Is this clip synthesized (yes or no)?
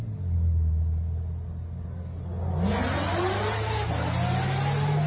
no